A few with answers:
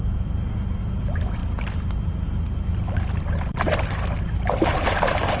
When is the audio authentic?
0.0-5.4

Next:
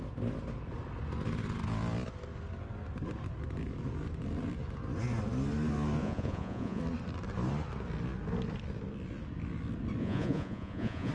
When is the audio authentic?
0.0-6.0; 6.8-10.0

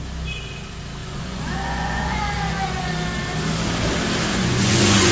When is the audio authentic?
0.0-1.0; 2.9-4.3

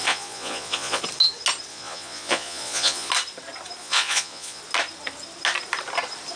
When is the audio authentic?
1.0-1.7; 3.1-3.8; 4.6-6.4

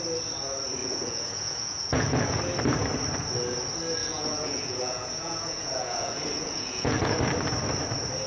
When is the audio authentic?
0.0-0.8; 2.4-4.0; 7.2-8.3

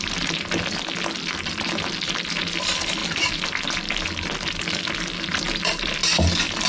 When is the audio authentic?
0.0-6.7

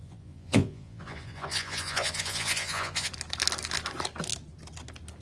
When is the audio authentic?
3.1-5.2